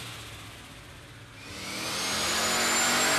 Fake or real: real